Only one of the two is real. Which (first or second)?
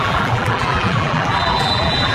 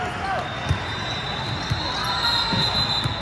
second